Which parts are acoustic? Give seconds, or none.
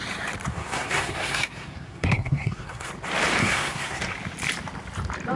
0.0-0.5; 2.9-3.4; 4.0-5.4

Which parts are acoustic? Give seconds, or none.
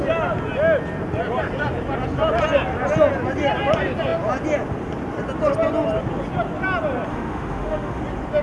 0.0-7.1; 8.0-8.4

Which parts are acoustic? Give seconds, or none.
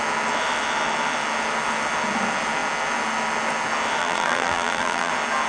0.0-4.0; 5.1-5.5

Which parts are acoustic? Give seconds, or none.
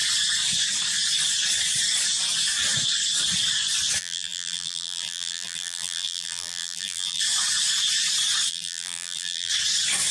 0.0-4.0; 7.2-8.5; 9.5-10.1